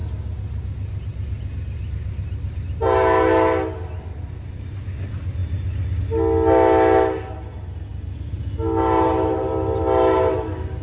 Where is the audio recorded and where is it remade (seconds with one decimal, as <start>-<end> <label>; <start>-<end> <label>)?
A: 0.0-10.8 recorded